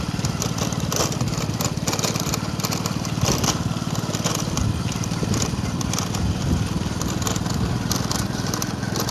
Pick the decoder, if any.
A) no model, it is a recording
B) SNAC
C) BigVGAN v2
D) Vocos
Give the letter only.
A